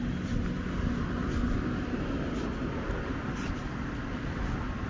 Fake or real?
real